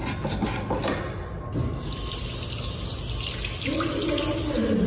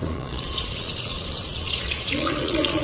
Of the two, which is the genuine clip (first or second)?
first